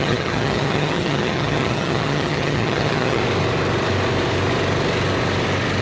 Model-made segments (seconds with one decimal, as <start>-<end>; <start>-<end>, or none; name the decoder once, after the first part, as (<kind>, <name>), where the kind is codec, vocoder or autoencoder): 0.0-3.2 (vocoder, HiFi-GAN)